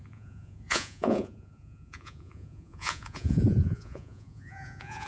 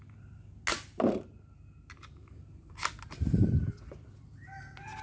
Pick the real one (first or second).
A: second